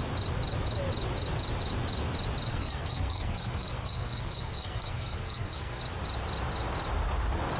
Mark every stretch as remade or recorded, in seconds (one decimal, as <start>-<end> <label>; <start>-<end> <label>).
0.0-2.5 recorded; 2.5-5.8 remade; 5.8-7.6 recorded